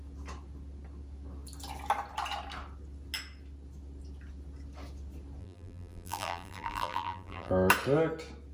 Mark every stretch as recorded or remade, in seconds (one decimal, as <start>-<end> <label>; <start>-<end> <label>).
0.0-5.4 recorded; 5.4-7.5 remade; 7.5-8.5 recorded